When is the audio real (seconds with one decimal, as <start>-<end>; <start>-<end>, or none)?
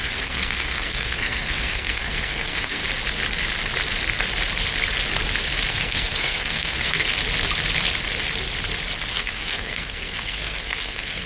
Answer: 2.8-5.7; 7.1-9.1